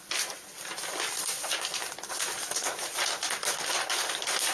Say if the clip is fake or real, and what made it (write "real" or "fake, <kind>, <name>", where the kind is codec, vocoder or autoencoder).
real